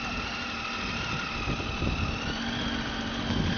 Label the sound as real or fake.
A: real